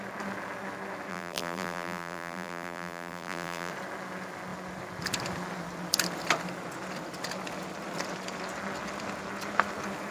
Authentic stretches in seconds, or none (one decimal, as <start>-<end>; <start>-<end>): 0.0-1.1; 3.7-10.1